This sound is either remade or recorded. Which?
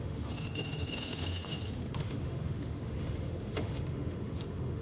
remade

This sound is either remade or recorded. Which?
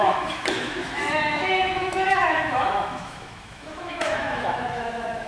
remade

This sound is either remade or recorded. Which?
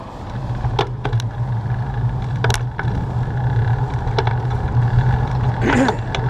recorded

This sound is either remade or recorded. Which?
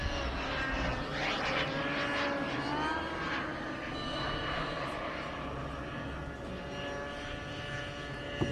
recorded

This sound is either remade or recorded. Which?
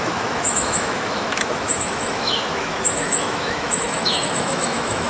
remade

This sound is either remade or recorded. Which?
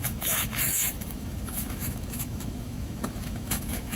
remade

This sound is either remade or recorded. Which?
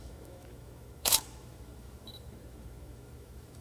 remade